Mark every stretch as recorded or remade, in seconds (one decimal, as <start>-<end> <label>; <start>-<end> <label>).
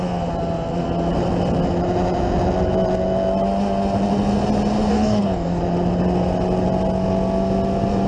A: 0.0-4.9 recorded; 4.9-5.6 remade; 5.6-8.1 recorded